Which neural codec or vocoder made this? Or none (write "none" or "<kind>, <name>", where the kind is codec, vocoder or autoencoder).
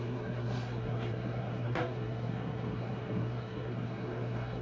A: codec, SNAC